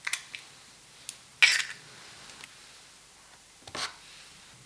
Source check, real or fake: real